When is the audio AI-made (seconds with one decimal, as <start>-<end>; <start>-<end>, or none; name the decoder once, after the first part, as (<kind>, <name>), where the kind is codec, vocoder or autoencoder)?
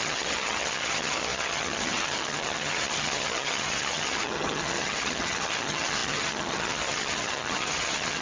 0.0-8.2 (vocoder, HiFi-GAN)